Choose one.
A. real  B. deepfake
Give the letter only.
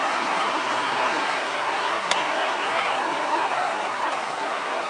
B